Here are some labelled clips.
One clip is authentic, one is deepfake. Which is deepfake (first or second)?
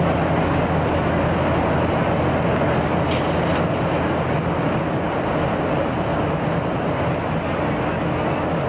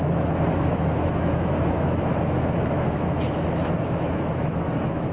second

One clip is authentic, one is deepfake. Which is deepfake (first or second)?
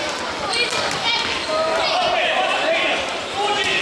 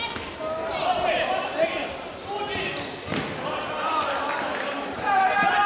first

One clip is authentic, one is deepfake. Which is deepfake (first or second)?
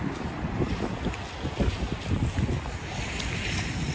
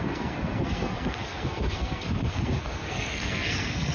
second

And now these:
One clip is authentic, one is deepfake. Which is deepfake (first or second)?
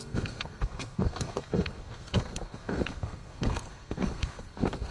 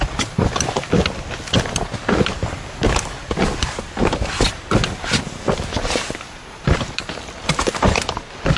first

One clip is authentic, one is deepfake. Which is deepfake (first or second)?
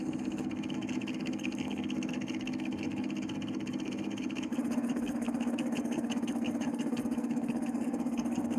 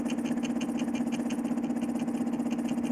first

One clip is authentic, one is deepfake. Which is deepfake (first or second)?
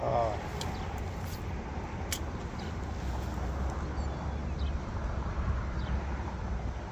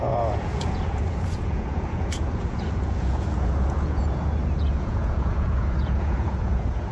second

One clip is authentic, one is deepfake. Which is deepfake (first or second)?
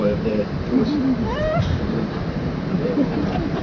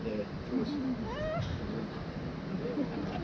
first